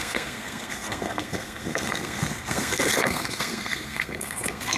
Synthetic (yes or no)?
yes